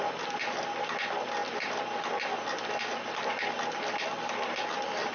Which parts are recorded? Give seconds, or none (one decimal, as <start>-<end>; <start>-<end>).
0.0-5.1